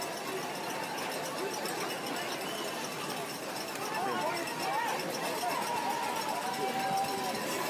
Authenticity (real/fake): real